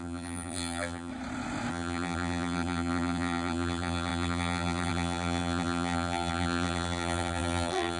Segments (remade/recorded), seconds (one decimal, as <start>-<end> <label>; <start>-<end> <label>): 0.0-1.1 remade; 1.1-1.7 recorded; 1.7-8.0 remade